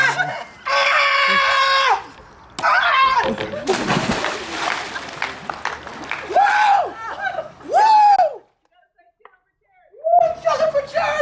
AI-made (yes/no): no